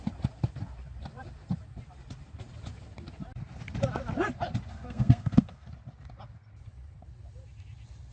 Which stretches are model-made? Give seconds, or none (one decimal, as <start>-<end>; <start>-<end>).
4.7-5.7